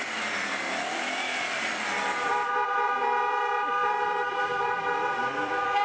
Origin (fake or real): fake